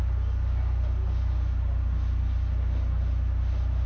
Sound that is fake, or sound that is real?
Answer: real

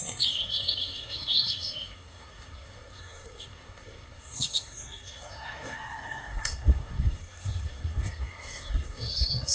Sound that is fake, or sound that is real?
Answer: fake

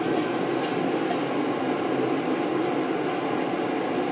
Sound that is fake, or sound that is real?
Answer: real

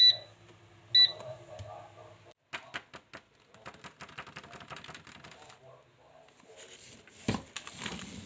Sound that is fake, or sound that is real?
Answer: real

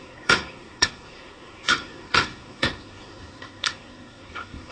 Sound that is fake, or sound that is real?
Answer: fake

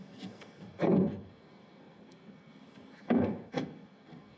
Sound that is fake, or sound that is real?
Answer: fake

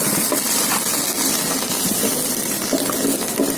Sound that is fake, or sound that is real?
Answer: real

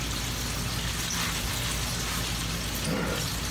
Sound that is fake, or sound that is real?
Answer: real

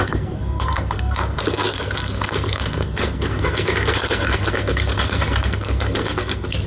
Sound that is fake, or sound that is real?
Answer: fake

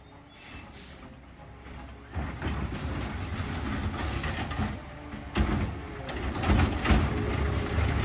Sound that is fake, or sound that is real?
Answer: real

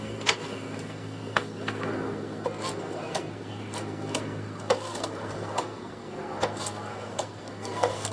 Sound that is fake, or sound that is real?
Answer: fake